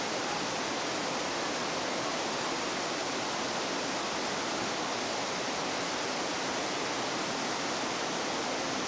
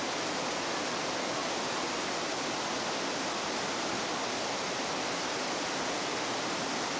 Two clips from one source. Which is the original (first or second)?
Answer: second